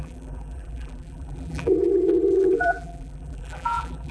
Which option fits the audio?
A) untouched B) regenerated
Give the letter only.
B